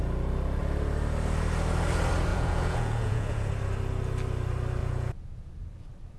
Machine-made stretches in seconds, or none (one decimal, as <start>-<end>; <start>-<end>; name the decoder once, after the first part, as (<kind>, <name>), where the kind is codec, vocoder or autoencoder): 2.3-3.5 (vocoder, Vocos); 4.8-5.5